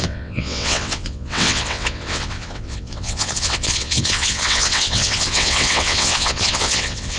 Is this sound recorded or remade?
remade